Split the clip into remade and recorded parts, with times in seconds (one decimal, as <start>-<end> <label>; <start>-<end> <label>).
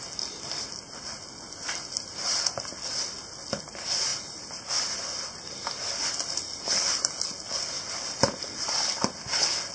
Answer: 0.0-9.7 recorded